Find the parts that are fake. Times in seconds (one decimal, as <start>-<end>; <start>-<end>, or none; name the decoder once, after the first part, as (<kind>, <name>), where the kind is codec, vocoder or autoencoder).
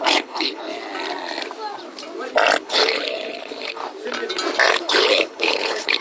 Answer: 0.0-0.7 (codec, HILCodec); 2.6-3.8; 4.7-6.0